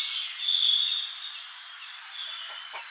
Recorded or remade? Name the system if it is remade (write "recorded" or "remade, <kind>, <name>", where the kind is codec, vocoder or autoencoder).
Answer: recorded